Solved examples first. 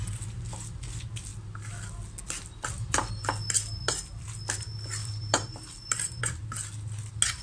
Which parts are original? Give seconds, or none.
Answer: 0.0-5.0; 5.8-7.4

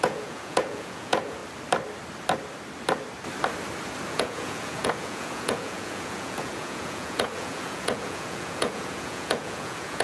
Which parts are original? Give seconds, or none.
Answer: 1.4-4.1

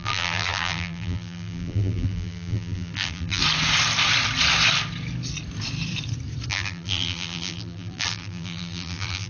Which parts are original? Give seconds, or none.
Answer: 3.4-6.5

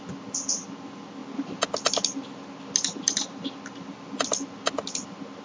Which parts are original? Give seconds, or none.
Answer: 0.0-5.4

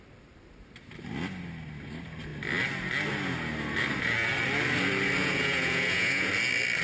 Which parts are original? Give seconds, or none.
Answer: 0.0-5.2; 6.3-6.8

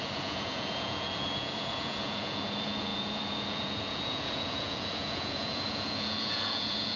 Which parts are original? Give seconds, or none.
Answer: none